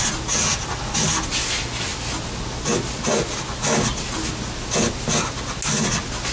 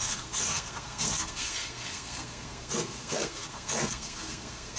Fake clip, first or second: second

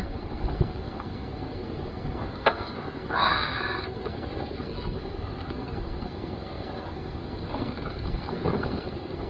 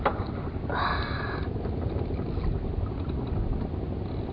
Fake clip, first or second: first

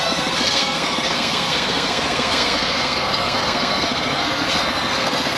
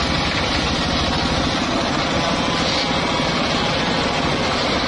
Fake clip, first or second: first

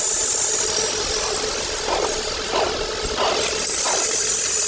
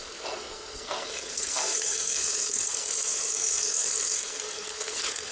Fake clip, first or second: second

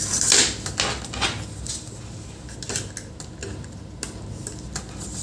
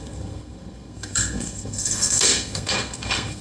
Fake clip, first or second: second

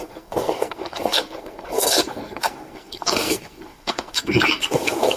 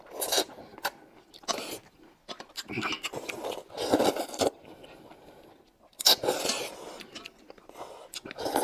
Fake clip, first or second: first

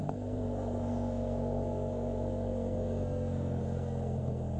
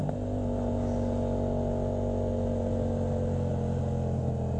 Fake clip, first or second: first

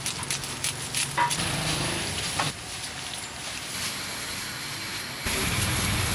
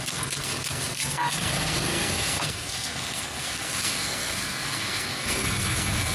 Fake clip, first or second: second